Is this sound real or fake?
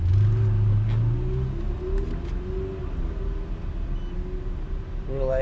real